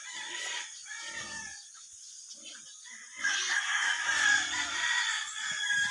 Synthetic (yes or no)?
yes